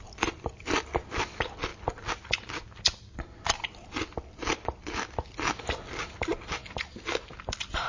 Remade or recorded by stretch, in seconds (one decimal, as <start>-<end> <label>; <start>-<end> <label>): 0.0-7.9 recorded